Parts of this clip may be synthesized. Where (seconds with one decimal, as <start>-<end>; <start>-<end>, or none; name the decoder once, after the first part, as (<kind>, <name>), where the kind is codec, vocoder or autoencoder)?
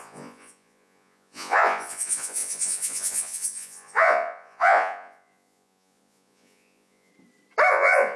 0.0-7.1 (vocoder, Vocos); 7.7-8.2